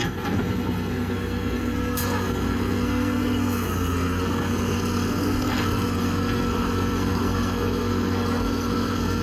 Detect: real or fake fake